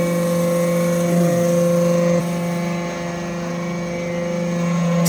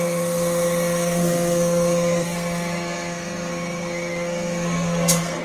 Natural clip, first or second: first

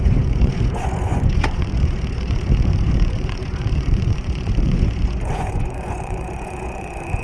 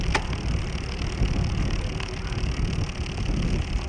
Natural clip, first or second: second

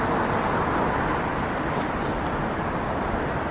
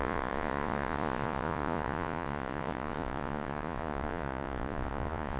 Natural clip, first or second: first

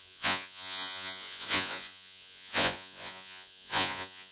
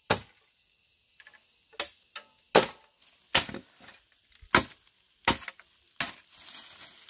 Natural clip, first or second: second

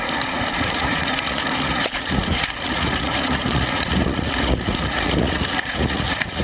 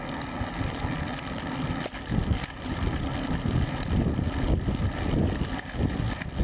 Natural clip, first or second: second